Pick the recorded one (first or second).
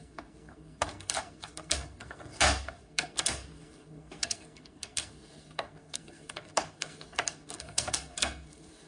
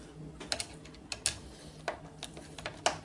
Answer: second